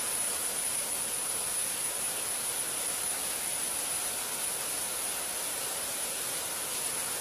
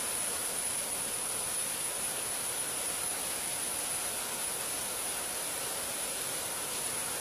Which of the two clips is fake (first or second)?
second